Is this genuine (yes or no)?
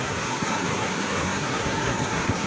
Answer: no